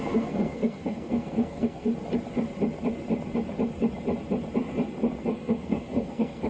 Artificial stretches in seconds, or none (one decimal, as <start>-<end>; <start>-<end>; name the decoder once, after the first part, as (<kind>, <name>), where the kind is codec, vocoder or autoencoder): 0.0-1.9 (codec, SNAC); 5.2-6.5